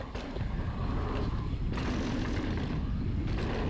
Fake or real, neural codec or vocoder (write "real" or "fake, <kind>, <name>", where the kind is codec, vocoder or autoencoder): real